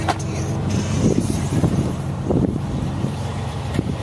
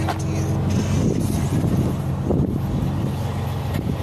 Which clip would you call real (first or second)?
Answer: second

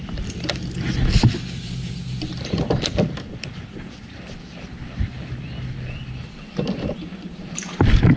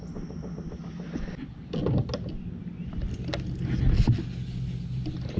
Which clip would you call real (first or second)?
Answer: second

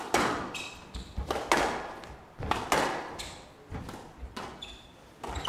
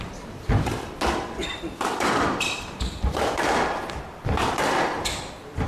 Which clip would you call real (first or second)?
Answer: first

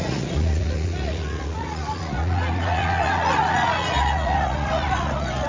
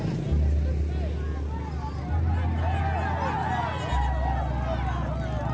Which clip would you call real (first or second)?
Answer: second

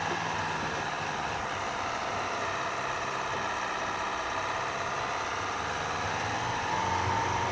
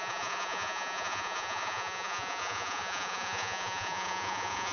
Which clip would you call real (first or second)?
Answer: first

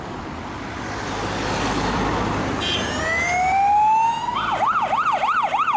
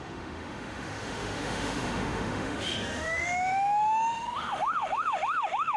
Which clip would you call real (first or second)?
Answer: first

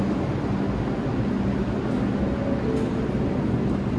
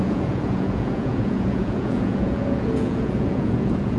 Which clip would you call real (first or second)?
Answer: first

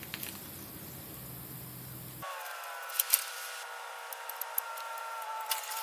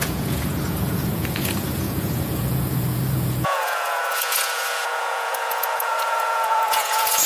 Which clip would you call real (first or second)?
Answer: first